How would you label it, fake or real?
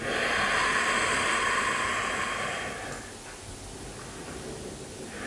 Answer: real